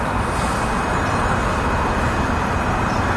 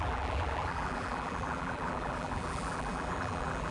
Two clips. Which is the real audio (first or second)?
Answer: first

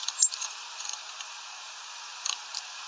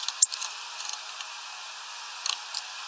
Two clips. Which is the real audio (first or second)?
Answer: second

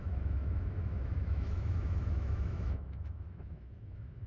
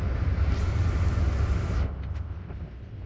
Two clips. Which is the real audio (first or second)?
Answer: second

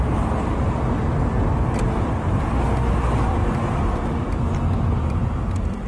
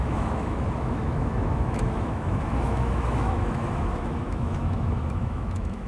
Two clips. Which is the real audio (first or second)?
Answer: first